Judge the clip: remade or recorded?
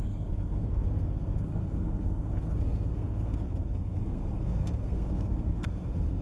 remade